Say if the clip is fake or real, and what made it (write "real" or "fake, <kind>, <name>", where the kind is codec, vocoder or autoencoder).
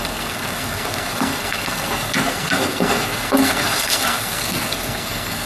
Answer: fake, codec, SNAC